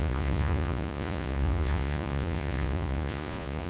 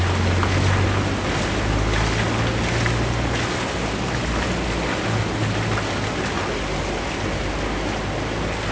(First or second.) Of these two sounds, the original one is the second